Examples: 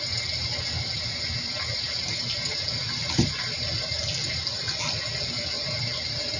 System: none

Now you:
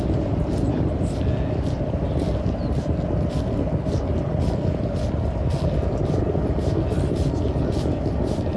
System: none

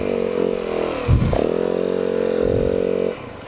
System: none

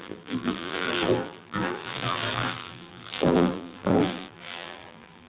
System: vocoder, BigVGAN v2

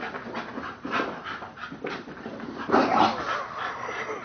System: none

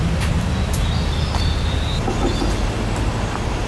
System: none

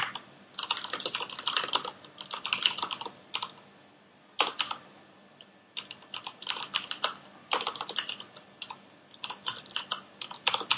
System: none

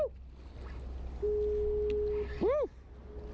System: none